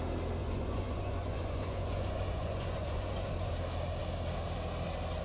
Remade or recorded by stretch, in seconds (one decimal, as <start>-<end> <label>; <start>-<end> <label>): 0.0-0.4 recorded; 0.4-3.5 remade; 3.5-5.2 recorded